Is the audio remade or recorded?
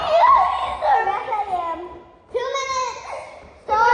recorded